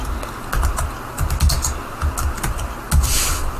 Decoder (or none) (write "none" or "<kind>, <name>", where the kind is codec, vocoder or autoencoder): none